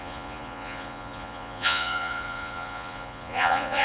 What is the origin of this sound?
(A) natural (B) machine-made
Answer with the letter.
B